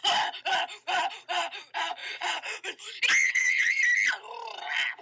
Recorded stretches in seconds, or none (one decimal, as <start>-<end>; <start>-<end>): 0.0-2.0; 2.8-3.2; 3.8-5.0